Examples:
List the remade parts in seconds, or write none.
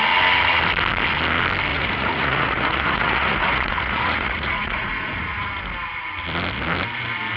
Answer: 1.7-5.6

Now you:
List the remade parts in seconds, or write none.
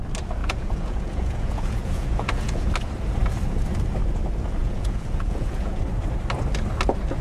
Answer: 0.4-2.7; 4.6-5.8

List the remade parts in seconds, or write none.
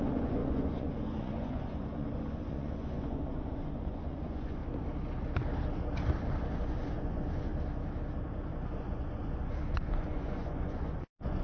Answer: 0.0-4.6; 6.6-7.5; 8.5-11.4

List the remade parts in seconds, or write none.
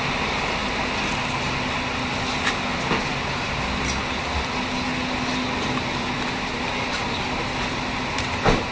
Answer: none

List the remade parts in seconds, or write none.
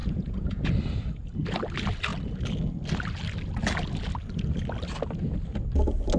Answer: 0.0-0.7